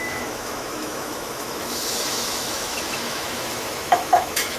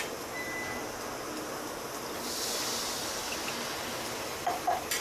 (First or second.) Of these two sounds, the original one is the second